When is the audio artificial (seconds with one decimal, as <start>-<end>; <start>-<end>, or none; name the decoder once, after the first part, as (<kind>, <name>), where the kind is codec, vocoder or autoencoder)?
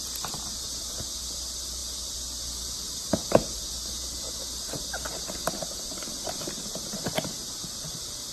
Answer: none